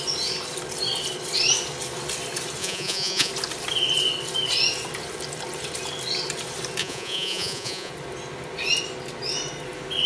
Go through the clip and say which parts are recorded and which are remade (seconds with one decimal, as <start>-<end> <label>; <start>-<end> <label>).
0.0-2.6 recorded; 2.6-3.3 remade; 3.3-6.8 recorded; 6.8-7.9 remade; 7.9-10.1 recorded